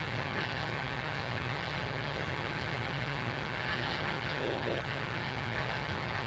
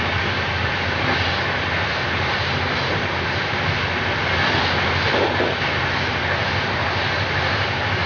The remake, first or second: first